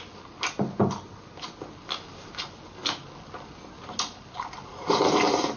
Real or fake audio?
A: real